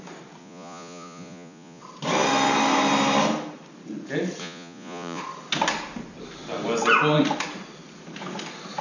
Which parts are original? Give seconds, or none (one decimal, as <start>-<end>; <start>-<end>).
0.0-0.4; 1.8-4.4; 5.2-8.8